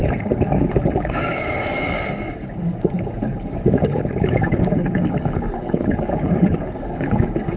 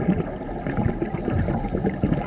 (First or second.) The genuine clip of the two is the second